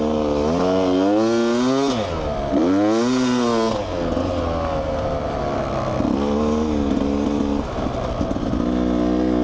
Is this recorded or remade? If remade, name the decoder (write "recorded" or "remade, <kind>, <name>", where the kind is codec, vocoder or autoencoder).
recorded